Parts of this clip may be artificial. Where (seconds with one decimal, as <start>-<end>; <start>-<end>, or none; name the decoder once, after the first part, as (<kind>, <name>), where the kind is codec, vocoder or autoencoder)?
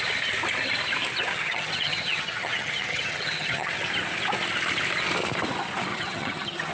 1.3-3.7 (vocoder, HiFi-GAN); 5.9-6.7